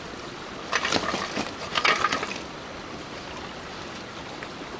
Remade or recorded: recorded